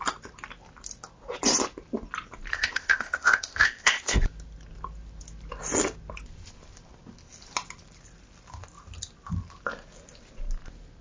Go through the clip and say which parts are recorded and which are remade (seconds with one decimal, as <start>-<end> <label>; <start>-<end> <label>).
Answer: 0.0-2.5 recorded; 2.5-4.2 remade; 4.2-11.0 recorded